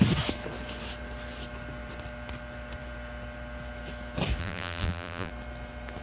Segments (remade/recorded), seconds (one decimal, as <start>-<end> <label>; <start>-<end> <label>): 0.0-4.4 recorded; 4.4-5.3 remade; 5.3-6.0 recorded